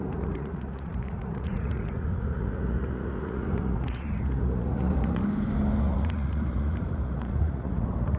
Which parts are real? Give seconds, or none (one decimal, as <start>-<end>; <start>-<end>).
5.2-5.8